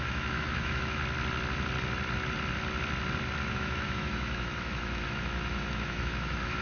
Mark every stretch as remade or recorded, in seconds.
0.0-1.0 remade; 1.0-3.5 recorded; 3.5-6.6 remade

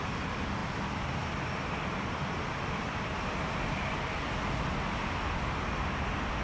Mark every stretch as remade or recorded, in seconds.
0.0-6.4 recorded

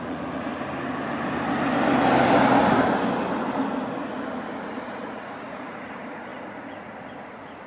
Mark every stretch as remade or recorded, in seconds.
0.0-0.5 remade; 0.5-4.8 recorded; 4.8-7.7 remade

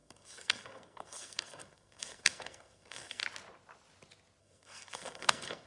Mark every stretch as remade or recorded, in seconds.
0.0-3.2 remade; 3.2-4.4 recorded; 4.4-5.7 remade